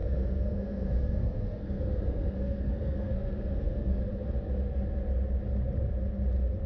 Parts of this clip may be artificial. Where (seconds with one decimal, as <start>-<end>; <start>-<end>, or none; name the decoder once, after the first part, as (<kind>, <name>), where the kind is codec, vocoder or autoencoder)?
0.0-4.0 (codec, SNAC)